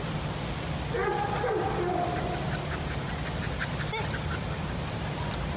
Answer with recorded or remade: recorded